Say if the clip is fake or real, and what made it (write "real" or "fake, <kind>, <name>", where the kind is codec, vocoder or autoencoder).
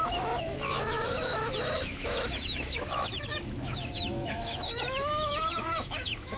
fake, autoencoder, DAC-VAE